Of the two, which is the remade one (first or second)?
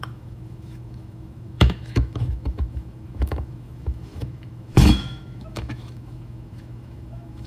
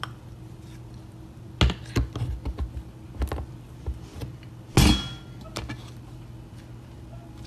first